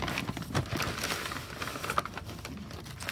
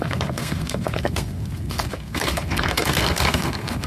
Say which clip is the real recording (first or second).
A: first